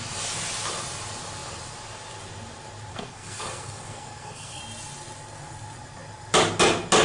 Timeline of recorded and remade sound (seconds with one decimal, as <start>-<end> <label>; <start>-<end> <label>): 0.0-2.9 recorded; 2.9-4.6 remade; 4.6-7.0 recorded